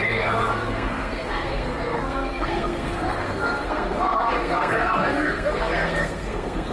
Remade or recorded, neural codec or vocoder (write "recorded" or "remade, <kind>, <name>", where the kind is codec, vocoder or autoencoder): remade, codec, SNAC